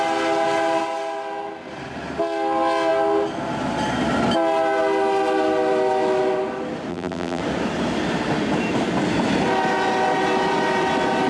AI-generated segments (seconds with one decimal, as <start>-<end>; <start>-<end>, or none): 6.9-7.4